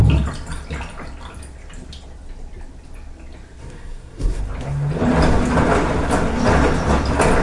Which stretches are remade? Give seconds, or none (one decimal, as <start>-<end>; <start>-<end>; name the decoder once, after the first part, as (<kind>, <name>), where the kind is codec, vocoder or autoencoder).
3.6-4.4 (codec, SNAC)